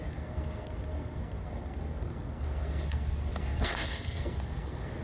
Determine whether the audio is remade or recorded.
remade